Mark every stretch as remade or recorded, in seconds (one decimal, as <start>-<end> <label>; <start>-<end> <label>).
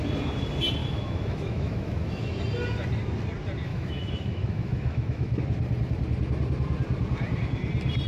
0.0-0.8 recorded; 0.8-2.4 remade; 2.4-3.7 recorded; 3.7-5.4 remade; 5.4-8.1 recorded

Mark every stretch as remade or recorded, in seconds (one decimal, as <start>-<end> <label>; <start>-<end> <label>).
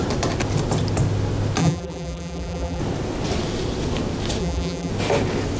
0.0-1.6 recorded; 1.6-2.8 remade; 2.8-4.4 recorded; 4.4-4.9 remade; 4.9-5.6 recorded